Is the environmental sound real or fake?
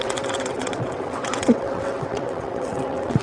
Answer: fake